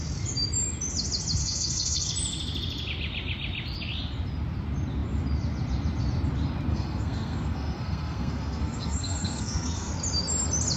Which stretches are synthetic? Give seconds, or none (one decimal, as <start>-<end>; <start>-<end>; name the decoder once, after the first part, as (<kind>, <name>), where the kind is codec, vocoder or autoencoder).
1.4-2.1 (codec, SNAC); 6.7-9.9